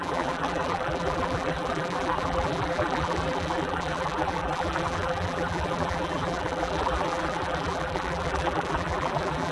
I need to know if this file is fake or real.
fake